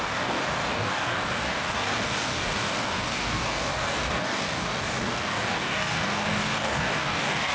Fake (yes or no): yes